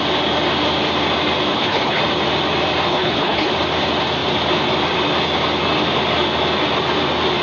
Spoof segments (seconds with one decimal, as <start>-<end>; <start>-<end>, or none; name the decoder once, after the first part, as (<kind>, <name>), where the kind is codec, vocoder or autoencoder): 1.5-2.0 (codec, HILCodec); 2.9-3.5